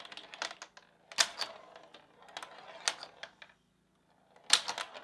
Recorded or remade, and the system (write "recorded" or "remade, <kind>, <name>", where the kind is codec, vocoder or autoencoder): recorded